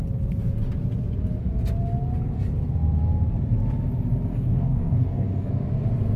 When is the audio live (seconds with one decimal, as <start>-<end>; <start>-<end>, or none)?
0.0-4.3; 5.5-6.2